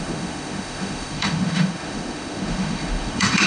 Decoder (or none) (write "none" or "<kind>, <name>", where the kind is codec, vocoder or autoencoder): autoencoder, DAC-VAE